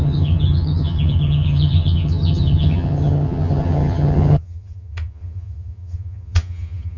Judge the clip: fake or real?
fake